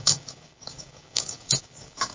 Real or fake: fake